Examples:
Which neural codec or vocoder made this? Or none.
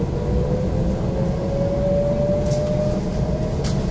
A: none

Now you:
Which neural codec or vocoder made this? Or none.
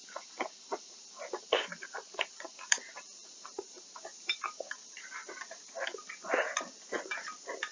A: vocoder, BigVGAN v2